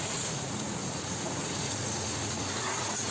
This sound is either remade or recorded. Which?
remade